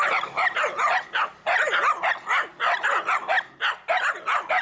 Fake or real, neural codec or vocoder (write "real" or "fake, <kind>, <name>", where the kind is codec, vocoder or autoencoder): real